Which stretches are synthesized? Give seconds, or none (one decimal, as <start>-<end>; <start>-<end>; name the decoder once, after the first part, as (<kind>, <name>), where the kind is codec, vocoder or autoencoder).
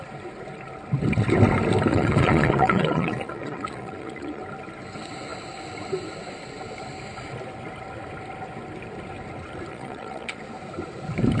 1.9-4.4 (vocoder, Vocos); 9.7-10.4